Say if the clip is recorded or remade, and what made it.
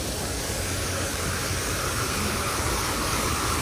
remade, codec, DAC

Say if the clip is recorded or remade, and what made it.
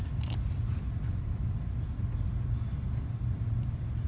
recorded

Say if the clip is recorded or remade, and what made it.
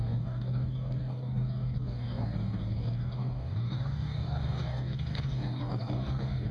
remade, codec, DAC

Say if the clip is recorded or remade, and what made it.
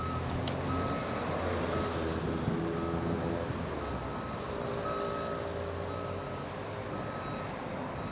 recorded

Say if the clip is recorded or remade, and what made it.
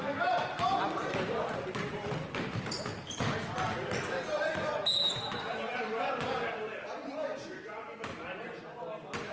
recorded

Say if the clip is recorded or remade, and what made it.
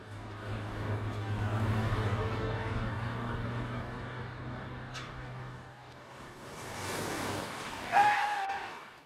remade, codec, DAC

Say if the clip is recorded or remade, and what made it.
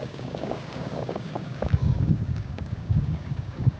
remade, codec, DAC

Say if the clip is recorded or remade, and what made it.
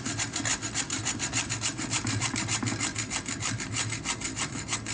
recorded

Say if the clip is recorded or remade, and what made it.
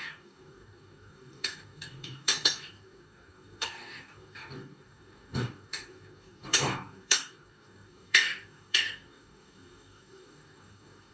remade, codec, DAC